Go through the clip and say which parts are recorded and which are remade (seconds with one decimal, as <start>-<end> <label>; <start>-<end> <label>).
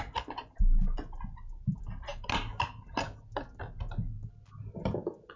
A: 0.0-5.4 recorded